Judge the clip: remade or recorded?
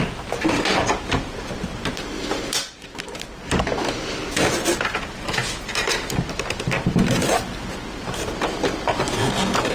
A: recorded